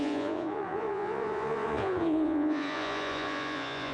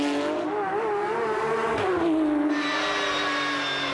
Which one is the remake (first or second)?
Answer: first